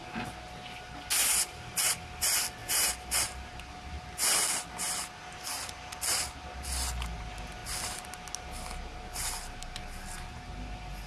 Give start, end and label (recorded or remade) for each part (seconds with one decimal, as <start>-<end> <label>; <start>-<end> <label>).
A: 0.0-11.1 recorded